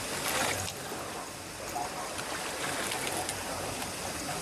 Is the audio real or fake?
real